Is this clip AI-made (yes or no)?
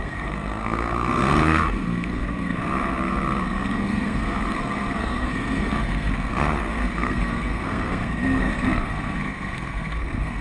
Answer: yes